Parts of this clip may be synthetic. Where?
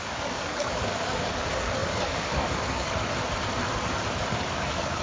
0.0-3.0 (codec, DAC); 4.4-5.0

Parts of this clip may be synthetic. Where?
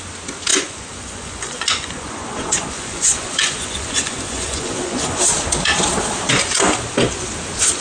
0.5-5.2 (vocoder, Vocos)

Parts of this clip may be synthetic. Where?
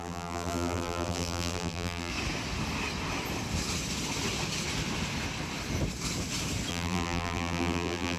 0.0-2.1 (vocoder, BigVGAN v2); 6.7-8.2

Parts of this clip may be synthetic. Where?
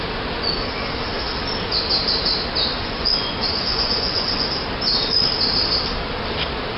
2.8-4.5 (vocoder, Vocos)